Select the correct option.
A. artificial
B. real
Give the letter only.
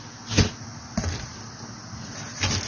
B